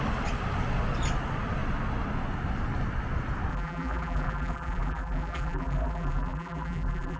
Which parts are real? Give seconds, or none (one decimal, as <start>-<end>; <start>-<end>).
0.0-3.5